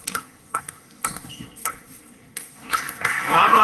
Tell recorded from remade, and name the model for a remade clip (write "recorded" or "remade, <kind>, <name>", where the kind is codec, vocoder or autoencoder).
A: remade, codec, SNAC